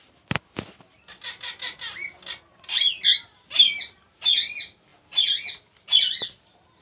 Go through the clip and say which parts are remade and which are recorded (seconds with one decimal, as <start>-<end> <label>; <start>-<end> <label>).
0.0-6.8 recorded